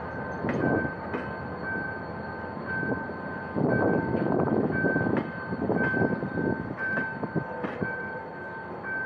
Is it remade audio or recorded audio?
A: remade